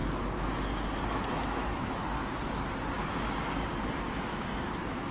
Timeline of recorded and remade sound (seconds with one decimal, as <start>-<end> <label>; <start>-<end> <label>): 0.0-1.3 recorded; 1.3-2.0 remade; 2.0-3.9 recorded; 3.9-5.1 remade